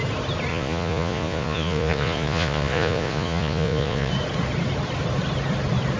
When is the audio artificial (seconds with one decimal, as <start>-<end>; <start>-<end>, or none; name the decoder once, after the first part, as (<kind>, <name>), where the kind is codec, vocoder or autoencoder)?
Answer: 0.5-4.1 (vocoder, Vocos)